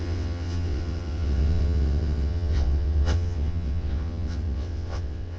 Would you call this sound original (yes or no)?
no